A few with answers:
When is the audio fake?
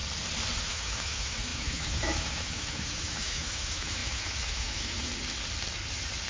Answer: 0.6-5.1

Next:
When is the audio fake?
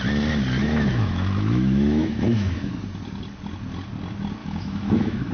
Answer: 0.6-2.7; 4.4-5.3